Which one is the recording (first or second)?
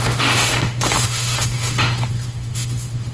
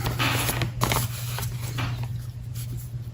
second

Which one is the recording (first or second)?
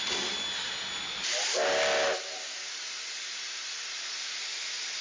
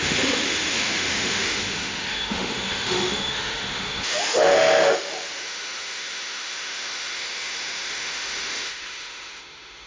first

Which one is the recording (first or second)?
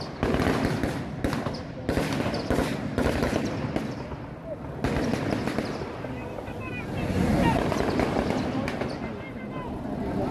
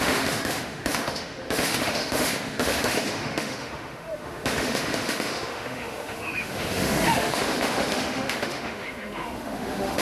first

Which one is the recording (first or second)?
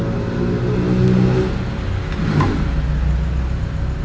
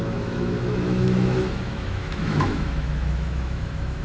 first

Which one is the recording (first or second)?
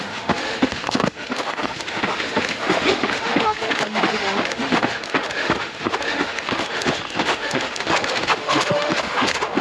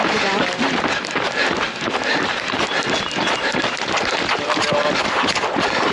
second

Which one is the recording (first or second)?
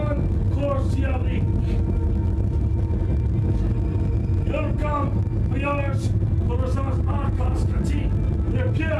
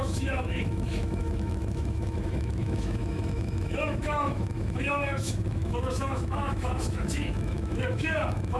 first